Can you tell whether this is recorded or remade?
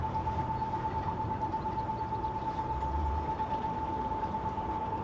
remade